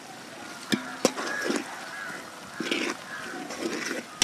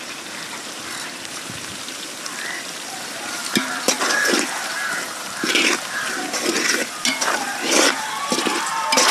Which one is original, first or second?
first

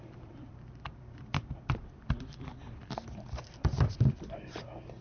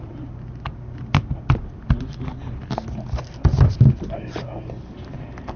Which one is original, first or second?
second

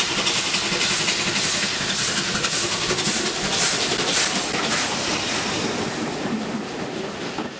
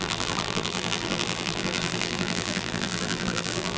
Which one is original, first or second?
first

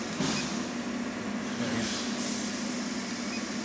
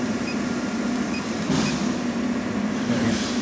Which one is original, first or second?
first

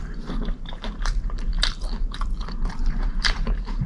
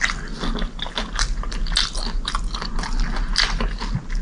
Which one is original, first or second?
second